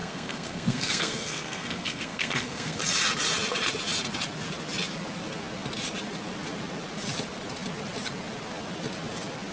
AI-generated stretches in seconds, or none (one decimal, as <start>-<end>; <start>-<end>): 0.0-2.8